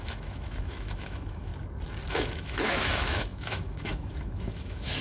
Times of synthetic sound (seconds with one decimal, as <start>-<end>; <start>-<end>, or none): 0.0-1.5; 2.1-5.0